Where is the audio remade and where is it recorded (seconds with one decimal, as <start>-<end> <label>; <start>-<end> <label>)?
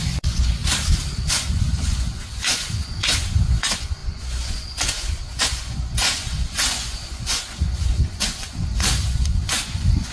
0.0-0.6 remade; 0.6-1.3 recorded; 1.3-10.1 remade